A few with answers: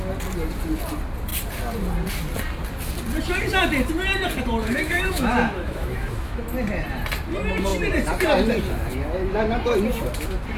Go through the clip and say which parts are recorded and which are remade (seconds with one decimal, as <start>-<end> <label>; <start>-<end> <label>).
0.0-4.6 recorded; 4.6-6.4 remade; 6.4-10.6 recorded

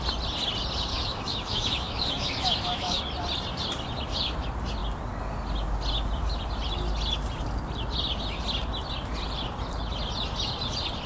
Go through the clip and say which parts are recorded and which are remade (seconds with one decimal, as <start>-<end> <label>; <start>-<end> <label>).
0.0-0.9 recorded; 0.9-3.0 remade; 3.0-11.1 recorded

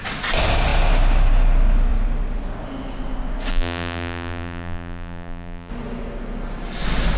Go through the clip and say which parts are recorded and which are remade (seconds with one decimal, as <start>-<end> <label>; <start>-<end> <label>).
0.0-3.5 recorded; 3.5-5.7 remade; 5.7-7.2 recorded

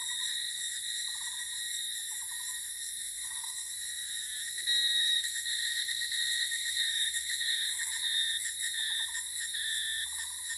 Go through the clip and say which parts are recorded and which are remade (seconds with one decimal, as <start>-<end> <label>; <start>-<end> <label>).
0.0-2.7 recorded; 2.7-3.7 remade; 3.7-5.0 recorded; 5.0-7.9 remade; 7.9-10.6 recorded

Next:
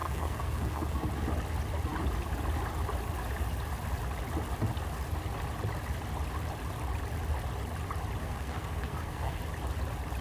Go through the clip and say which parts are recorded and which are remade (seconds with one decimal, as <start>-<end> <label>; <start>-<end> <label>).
0.0-1.1 remade; 1.1-8.2 recorded; 8.2-9.4 remade; 9.4-10.2 recorded

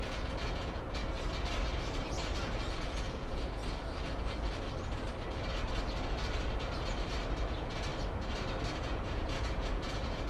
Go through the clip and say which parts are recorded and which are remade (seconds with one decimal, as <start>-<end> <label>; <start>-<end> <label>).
0.0-1.0 remade; 1.0-2.4 recorded; 2.4-3.6 remade; 3.6-7.5 recorded; 7.5-7.9 remade; 7.9-8.7 recorded; 8.7-10.3 remade